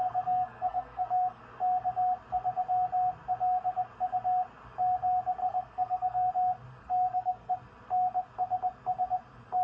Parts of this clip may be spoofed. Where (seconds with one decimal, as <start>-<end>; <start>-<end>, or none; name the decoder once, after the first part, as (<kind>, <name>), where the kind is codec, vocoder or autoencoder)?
0.0-1.4 (codec, SNAC); 5.4-6.3; 6.8-7.5